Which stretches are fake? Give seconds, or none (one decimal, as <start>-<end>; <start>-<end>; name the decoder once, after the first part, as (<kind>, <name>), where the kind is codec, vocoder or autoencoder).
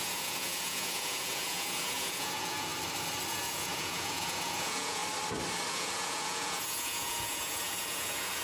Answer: 0.0-2.7 (vocoder, Vocos); 3.3-5.0; 5.7-8.4